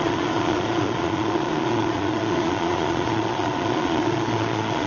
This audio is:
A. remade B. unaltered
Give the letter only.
A